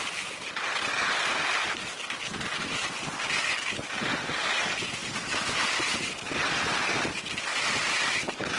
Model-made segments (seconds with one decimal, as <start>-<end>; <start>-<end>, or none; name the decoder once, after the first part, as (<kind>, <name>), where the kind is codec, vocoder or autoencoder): 7.5-8.6 (vocoder, BigVGAN v2)